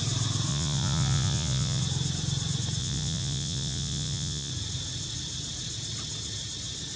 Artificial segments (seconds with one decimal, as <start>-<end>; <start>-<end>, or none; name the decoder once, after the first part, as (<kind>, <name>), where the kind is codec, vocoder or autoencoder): 0.5-1.8 (vocoder, Vocos); 2.8-4.5